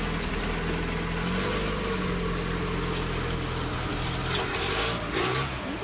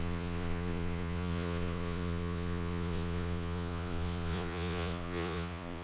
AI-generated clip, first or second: second